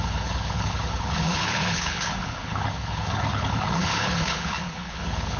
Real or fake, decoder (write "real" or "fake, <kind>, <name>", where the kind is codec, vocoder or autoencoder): fake, codec, HILCodec